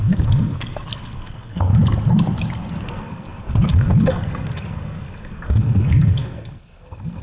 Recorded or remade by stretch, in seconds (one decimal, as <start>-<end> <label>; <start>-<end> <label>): 0.0-1.7 remade; 1.7-2.7 recorded; 2.7-7.2 remade